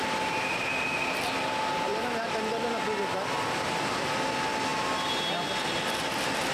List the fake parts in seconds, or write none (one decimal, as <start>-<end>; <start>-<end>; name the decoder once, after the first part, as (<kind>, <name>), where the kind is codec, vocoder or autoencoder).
none